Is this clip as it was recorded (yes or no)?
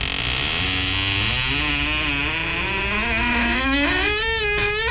yes